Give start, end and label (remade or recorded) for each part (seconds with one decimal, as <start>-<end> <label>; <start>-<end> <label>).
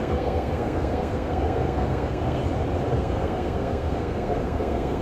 0.0-2.4 remade; 2.4-3.0 recorded; 3.0-5.0 remade